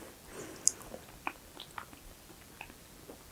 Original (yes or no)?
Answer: yes